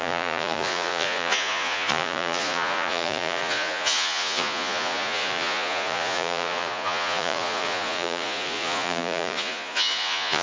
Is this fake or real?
fake